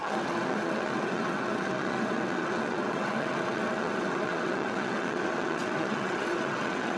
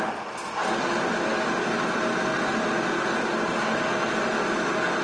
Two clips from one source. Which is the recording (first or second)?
second